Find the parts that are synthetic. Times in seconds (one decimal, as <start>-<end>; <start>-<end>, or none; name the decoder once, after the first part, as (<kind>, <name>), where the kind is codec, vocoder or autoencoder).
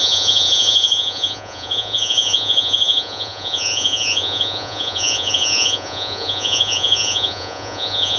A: 0.0-8.2 (vocoder, Vocos)